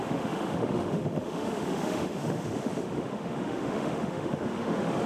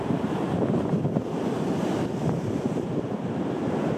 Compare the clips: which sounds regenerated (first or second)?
first